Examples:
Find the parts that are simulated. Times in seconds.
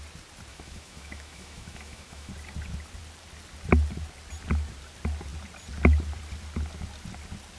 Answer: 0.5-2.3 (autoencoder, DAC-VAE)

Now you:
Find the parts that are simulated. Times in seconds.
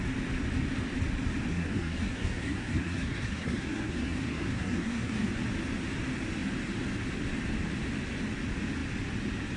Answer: 1.5-5.3 (codec, SNAC)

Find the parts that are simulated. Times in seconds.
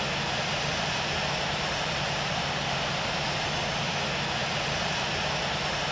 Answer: 0.7-3.6 (vocoder, BigVGAN v2); 4.4-5.2